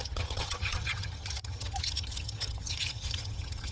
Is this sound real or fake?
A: fake